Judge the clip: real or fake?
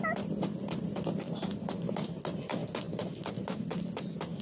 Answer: real